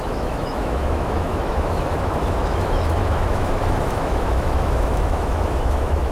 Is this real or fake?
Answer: fake